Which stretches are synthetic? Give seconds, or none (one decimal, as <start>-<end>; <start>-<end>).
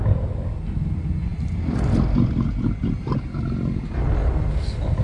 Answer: none